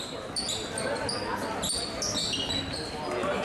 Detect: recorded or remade recorded